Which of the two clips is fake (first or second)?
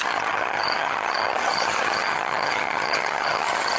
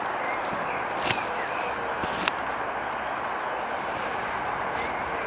first